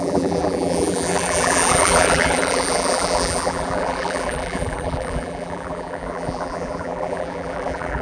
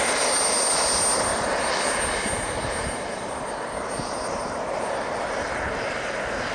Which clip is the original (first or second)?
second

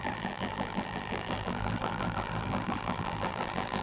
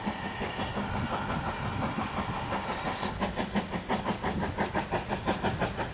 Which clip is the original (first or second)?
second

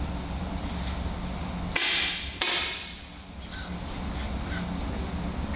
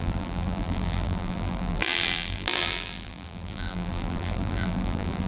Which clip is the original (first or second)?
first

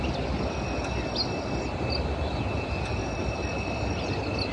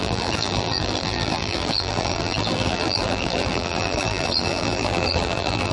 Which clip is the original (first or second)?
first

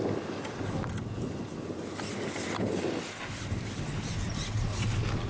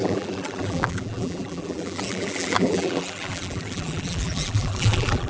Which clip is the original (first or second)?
first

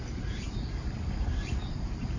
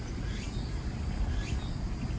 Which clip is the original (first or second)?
second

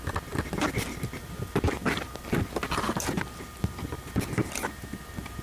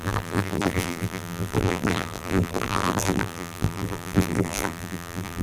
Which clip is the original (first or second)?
first